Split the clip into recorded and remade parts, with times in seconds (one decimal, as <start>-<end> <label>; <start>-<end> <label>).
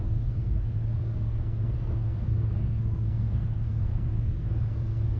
0.0-5.2 remade